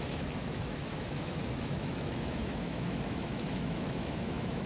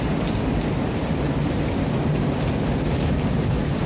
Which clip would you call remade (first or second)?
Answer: first